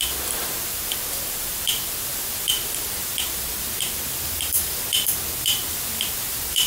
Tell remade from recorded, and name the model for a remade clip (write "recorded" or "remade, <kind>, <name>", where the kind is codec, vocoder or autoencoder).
remade, vocoder, BigVGAN v2